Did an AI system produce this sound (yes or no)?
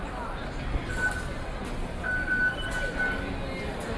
no